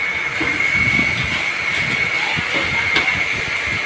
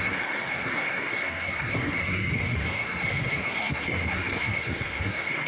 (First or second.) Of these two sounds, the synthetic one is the second